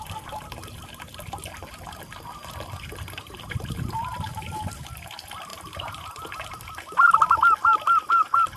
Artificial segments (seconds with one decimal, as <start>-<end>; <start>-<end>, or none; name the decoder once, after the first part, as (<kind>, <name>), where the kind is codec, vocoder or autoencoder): 3.2-3.9 (vocoder, BigVGAN v2); 5.5-6.1